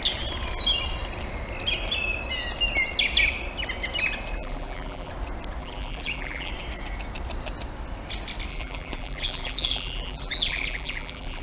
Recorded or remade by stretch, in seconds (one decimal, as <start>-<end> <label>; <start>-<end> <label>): 0.0-4.4 recorded; 4.4-5.1 remade; 5.1-5.6 recorded; 5.6-6.5 remade; 6.5-8.5 recorded; 8.5-11.4 remade